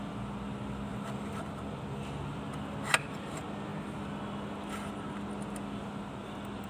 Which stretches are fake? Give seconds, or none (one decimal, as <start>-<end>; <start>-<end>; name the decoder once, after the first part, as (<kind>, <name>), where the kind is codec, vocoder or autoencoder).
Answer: none